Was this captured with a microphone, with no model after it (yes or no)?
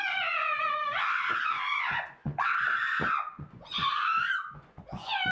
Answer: no